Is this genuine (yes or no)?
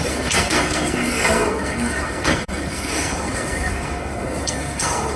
no